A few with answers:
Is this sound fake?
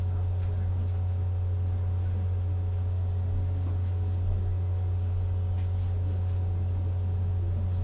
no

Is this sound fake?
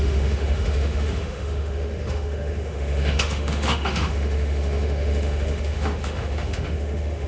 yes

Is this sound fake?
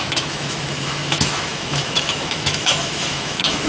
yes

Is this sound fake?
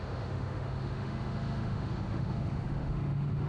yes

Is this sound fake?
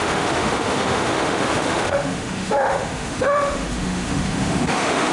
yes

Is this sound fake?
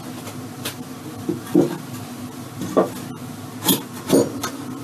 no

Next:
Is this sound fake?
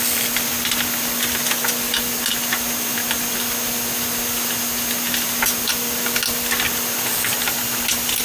no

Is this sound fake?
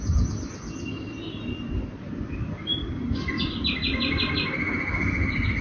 no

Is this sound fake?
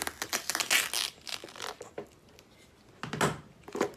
no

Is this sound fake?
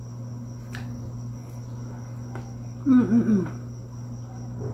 no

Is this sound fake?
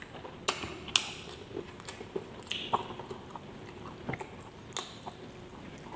no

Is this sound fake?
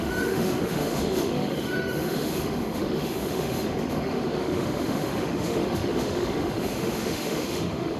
yes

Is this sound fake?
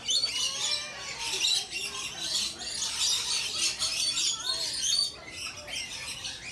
no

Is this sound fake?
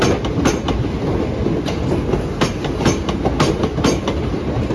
no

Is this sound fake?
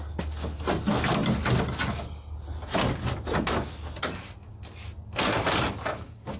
no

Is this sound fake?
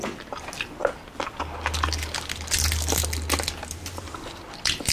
no